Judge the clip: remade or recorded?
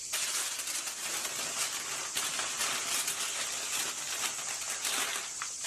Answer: recorded